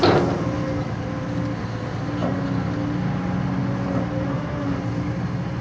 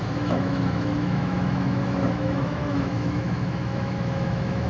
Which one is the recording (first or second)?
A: first